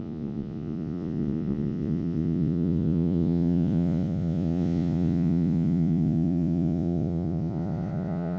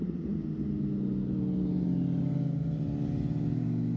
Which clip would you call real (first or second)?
second